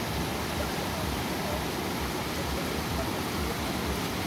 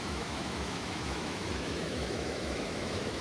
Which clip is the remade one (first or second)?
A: second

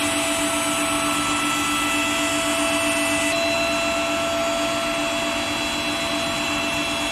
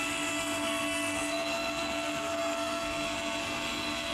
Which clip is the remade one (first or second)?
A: second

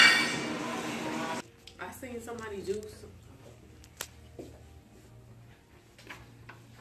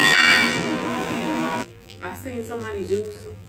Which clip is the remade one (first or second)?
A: second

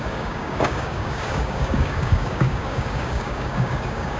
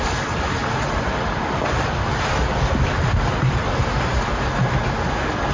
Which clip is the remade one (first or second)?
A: first